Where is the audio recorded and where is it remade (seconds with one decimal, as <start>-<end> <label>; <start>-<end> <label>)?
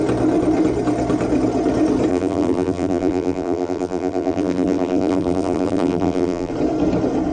0.0-2.1 recorded; 2.1-6.5 remade; 6.5-7.3 recorded